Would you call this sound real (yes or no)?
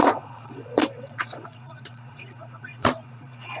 no